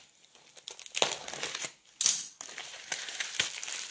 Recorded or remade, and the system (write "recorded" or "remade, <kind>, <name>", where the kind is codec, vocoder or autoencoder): recorded